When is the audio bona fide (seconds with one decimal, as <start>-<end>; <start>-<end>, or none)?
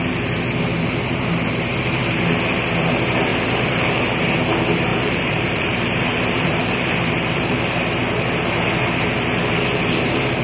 0.0-3.3; 4.0-4.9; 7.5-10.4